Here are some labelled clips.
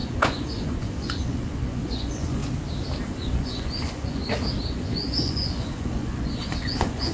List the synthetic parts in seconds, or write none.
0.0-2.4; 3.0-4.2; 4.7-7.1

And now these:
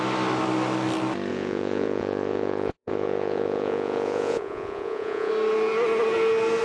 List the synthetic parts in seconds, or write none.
1.3-5.3

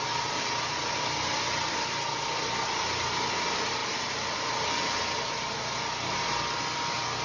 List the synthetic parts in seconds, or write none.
none

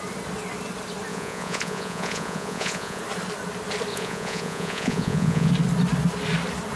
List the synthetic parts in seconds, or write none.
1.1-3.0; 3.9-5.5

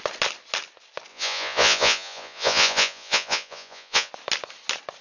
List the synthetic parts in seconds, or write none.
1.1-4.1

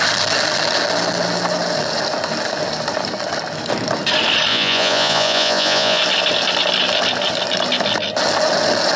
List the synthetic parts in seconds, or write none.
4.5-6.0

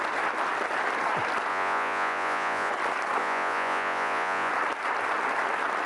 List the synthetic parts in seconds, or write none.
1.5-2.7; 3.2-4.5

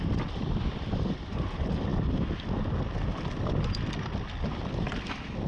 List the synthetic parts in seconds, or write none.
none